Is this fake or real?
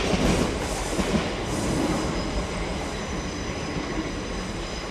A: real